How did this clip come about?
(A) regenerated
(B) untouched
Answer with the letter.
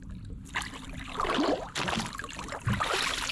B